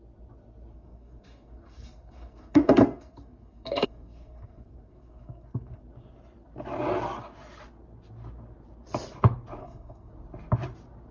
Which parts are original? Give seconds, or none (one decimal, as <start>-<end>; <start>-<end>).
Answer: 0.0-0.7; 5.8-9.6; 10.1-11.1